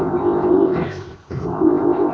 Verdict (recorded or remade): remade